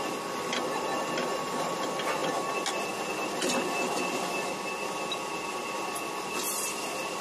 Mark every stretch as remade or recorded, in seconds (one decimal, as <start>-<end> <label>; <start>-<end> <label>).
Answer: 0.0-7.2 recorded